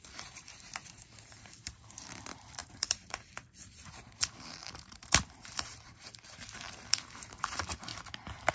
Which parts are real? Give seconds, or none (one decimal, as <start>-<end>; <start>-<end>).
7.9-8.5